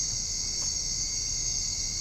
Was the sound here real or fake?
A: real